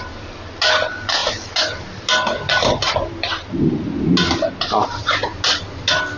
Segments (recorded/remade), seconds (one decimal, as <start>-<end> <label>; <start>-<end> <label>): 0.0-6.2 recorded